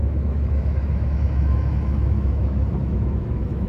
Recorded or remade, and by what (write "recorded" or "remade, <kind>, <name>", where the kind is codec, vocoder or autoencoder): remade, autoencoder, DAC-VAE